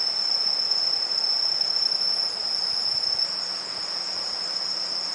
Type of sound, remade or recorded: recorded